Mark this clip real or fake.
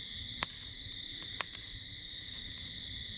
real